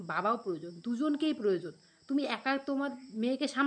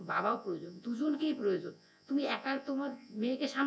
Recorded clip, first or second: first